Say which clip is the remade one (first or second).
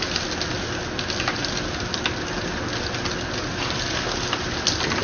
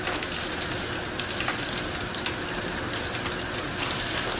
second